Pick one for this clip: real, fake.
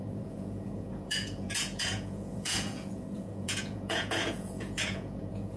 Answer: fake